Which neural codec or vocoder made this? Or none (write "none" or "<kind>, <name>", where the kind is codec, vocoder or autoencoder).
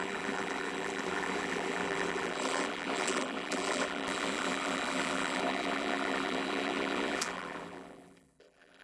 vocoder, BigVGAN v2